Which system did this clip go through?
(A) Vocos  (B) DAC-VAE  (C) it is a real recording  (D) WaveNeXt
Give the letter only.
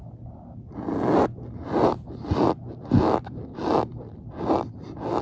C